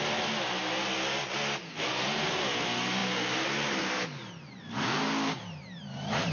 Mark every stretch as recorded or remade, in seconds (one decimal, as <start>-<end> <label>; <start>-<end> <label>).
0.0-6.3 recorded